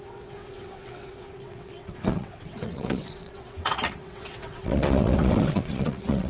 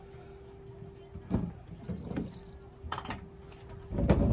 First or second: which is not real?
first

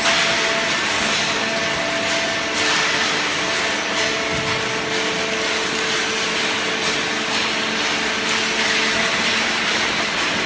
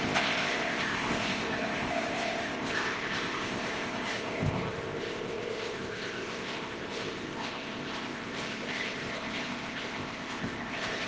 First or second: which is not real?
second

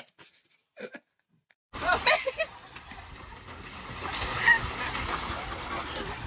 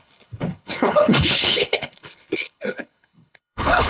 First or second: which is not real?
second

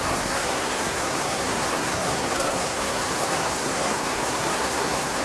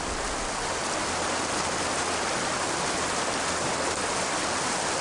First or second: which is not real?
first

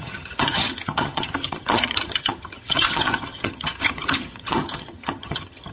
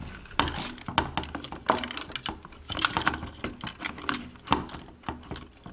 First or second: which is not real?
first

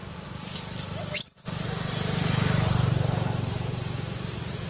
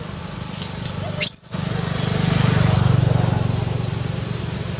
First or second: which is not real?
first